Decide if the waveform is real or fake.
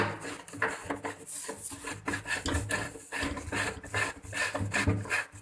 real